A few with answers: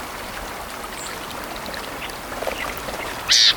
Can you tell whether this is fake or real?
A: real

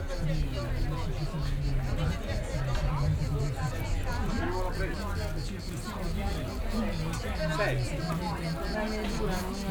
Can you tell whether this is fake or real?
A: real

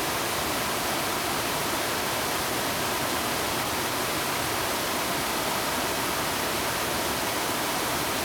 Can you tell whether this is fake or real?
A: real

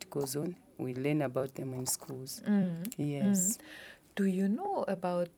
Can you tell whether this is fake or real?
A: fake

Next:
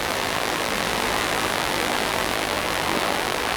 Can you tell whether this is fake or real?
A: fake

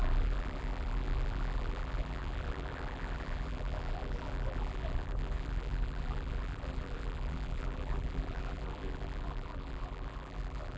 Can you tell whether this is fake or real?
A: fake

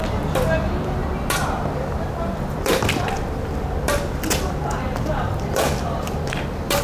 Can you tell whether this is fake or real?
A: fake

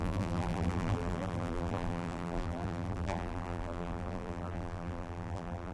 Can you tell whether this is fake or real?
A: fake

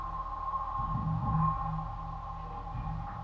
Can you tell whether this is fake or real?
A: real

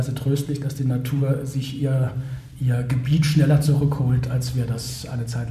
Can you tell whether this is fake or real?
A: real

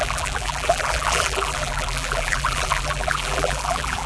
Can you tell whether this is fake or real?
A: fake